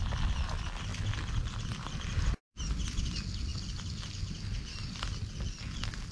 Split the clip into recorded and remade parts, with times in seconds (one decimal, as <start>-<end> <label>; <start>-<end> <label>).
0.0-6.1 recorded